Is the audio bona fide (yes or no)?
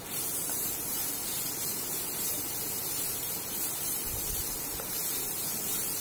no